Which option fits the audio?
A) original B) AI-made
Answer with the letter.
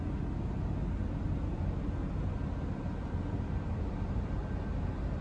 A